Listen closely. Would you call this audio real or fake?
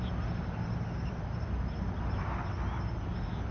real